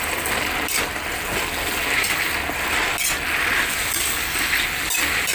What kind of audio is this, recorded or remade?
recorded